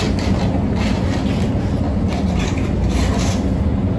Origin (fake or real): real